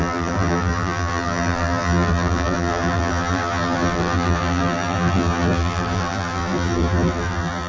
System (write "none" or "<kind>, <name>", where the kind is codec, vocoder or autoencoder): vocoder, BigVGAN v2